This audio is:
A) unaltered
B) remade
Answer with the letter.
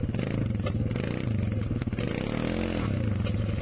A